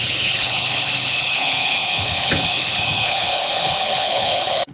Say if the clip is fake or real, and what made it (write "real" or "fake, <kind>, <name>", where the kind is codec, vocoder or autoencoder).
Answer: fake, codec, HILCodec